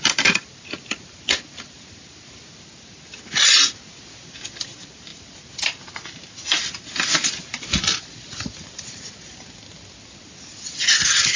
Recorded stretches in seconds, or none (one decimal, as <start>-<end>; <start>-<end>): 0.0-11.4